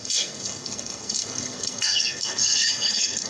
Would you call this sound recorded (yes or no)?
no